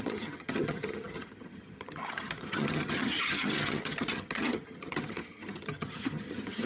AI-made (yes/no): yes